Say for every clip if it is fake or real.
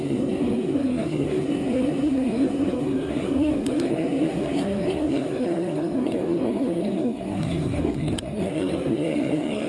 fake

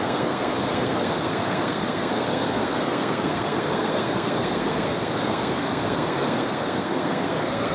fake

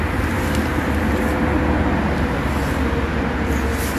real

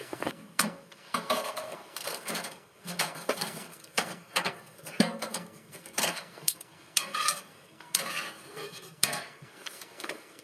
fake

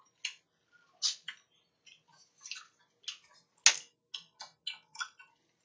real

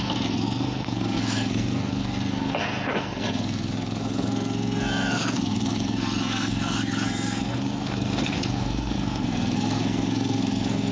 fake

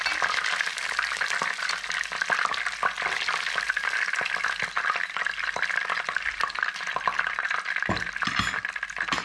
real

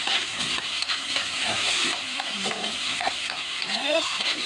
fake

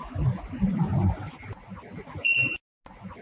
real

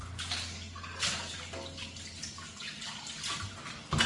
real